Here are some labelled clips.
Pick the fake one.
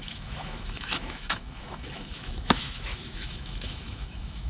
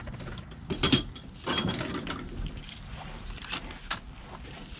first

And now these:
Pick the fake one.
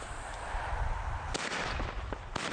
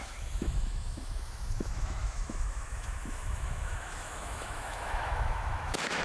second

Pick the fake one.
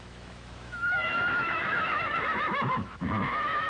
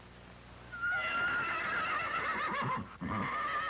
first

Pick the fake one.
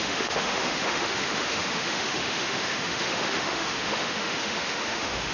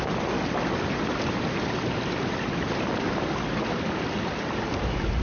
first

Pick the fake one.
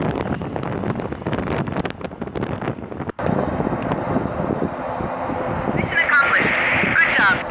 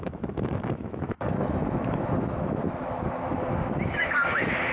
second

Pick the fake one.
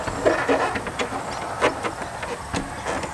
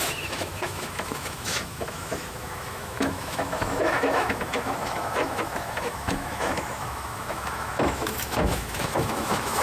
second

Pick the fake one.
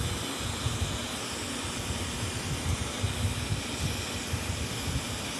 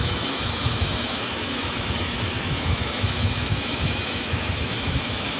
second